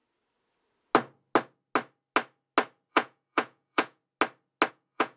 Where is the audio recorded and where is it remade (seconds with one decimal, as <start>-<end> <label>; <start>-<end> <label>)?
0.0-2.9 recorded; 2.9-4.0 remade; 4.0-4.7 recorded; 4.7-5.2 remade